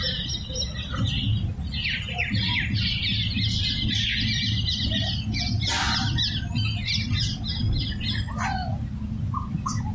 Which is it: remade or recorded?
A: recorded